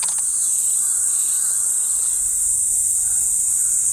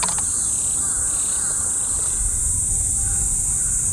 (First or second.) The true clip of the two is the first